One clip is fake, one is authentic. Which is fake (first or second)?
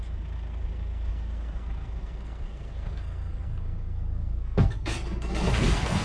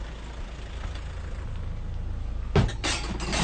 first